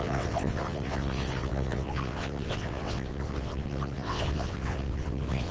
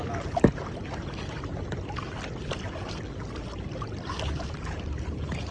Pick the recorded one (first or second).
second